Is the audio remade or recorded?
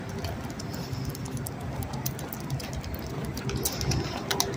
recorded